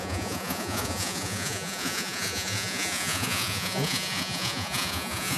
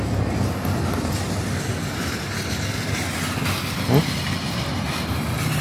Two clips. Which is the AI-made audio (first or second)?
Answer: first